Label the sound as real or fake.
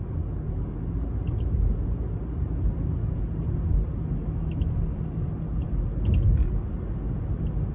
real